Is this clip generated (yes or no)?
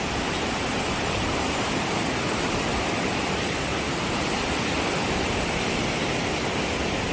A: no